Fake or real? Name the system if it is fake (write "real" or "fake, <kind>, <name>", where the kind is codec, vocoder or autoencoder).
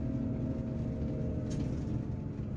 real